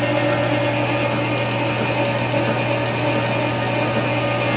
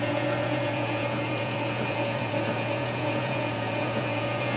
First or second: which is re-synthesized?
second